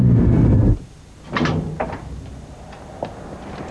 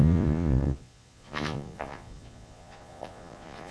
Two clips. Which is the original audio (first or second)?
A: first